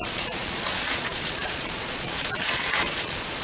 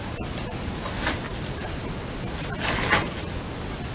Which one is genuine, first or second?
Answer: second